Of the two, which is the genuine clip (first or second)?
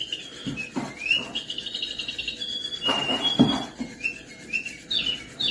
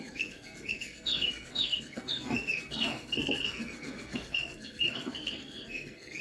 first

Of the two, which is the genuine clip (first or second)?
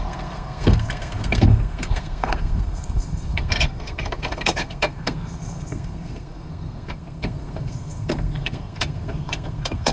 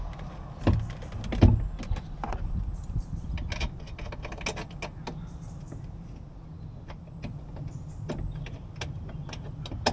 second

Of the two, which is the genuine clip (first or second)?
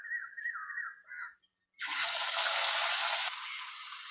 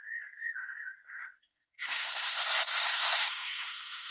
first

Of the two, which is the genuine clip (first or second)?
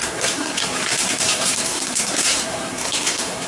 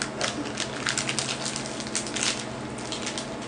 second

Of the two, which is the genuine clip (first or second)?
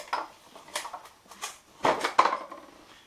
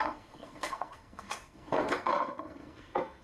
first